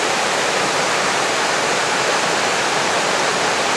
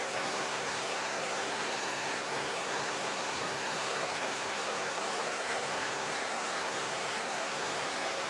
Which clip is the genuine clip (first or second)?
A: first